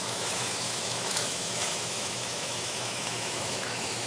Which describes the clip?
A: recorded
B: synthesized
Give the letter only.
B